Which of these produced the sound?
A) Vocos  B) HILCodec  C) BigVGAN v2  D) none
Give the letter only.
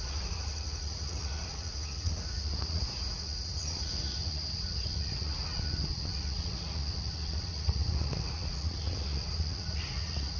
A